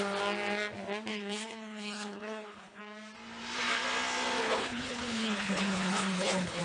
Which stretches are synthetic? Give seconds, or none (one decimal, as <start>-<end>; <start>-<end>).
1.1-2.8; 4.4-6.6